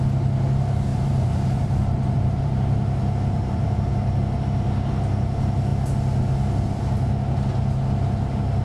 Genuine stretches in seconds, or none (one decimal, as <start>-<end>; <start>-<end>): 0.0-0.9; 4.2-8.6